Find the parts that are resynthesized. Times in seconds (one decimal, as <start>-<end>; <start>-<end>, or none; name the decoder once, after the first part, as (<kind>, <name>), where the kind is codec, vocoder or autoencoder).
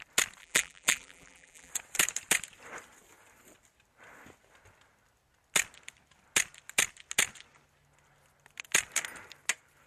0.4-1.7 (vocoder, BigVGAN v2)